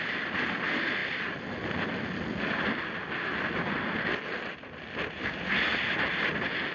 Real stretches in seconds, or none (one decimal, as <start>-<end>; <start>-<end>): 0.0-6.7